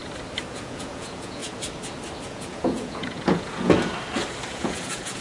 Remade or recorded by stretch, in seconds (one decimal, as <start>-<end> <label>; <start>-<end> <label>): 0.0-0.5 recorded; 0.5-1.4 remade; 1.4-2.2 recorded; 2.2-3.9 remade; 3.9-4.5 recorded; 4.5-5.2 remade